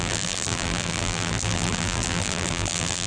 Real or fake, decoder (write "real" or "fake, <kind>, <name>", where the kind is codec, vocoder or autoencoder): fake, vocoder, BigVGAN v2